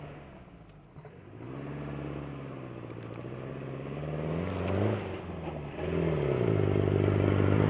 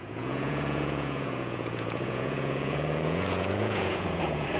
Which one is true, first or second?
first